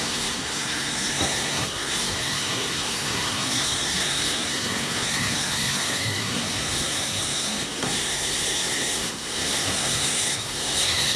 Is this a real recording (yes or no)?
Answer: no